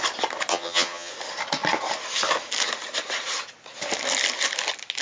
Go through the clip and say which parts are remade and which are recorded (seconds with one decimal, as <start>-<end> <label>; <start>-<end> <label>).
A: 0.0-0.5 recorded; 0.5-1.1 remade; 1.1-5.0 recorded